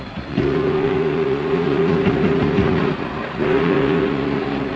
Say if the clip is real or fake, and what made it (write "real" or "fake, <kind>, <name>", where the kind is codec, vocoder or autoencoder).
fake, vocoder, Vocos